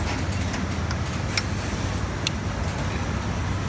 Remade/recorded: recorded